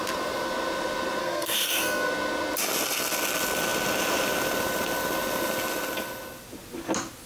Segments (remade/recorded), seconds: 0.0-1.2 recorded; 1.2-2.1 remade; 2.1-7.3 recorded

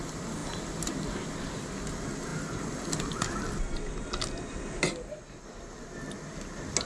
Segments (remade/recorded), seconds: 0.0-6.9 recorded